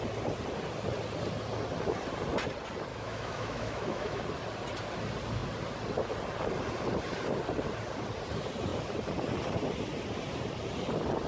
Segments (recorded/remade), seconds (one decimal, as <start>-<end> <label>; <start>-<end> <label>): 0.0-2.9 recorded; 2.9-4.2 remade; 4.2-11.3 recorded